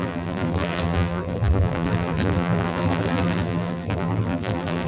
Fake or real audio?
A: fake